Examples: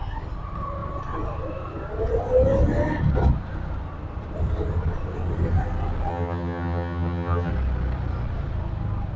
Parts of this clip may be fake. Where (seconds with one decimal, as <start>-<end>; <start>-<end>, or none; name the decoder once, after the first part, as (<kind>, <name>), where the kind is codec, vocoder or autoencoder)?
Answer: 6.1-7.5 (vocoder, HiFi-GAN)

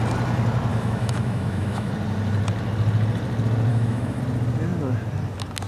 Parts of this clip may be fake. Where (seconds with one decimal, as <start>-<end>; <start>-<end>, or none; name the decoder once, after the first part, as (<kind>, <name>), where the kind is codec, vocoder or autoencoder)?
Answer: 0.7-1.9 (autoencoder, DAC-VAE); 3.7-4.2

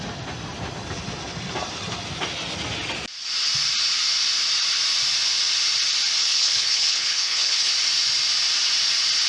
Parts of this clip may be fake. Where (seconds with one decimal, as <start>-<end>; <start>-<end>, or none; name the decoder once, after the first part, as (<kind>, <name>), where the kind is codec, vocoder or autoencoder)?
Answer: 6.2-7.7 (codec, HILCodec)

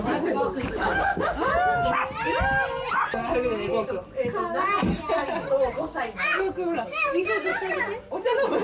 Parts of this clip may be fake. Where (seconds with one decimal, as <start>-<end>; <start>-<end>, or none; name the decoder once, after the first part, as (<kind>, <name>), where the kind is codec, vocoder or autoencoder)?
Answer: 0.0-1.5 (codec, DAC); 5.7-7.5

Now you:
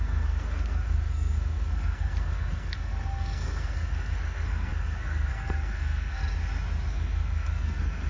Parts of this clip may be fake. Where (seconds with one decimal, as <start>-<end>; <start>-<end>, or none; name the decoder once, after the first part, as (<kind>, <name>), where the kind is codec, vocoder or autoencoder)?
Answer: 0.0-6.2 (codec, SNAC); 6.9-8.1

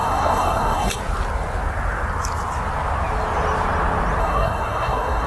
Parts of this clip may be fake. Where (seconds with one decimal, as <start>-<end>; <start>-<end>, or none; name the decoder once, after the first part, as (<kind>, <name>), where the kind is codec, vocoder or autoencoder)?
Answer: 0.0-1.0 (codec, SNAC); 4.2-5.3